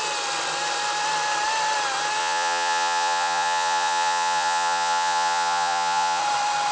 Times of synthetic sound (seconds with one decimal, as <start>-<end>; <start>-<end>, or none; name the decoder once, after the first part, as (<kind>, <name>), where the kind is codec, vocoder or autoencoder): 2.2-6.2 (vocoder, Vocos)